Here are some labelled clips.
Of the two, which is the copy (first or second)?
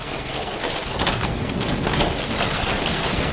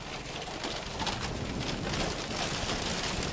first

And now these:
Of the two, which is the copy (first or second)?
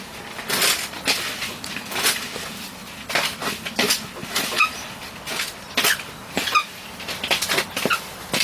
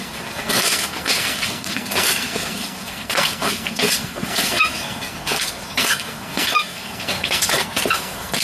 second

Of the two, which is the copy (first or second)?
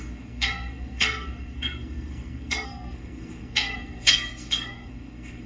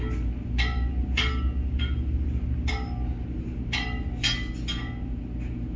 first